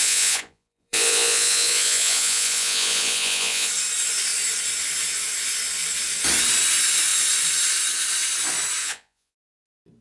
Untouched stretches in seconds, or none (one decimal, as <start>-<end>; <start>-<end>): 3.7-8.8; 9.4-10.0